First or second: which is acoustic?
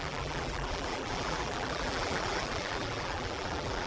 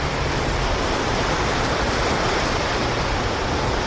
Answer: second